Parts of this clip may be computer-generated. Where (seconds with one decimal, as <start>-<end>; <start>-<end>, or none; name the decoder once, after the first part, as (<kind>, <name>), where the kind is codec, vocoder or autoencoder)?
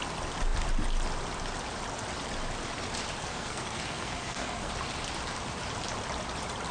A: 3.2-4.7 (codec, SNAC)